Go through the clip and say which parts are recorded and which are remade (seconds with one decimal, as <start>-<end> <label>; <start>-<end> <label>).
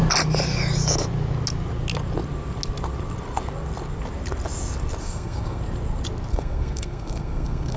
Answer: 0.0-5.0 recorded; 5.0-5.6 remade; 5.6-6.3 recorded; 6.3-7.8 remade